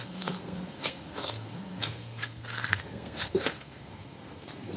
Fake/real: fake